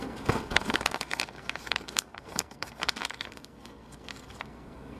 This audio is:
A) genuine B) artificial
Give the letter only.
B